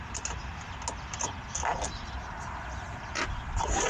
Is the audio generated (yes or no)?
no